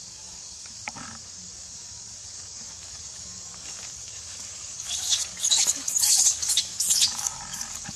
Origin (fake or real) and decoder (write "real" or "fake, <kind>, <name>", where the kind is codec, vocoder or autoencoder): fake, codec, DAC